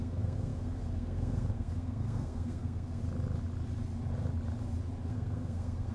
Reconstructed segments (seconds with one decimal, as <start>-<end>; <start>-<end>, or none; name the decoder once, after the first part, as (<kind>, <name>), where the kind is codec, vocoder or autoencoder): 0.0-3.0 (codec, SNAC); 5.1-5.9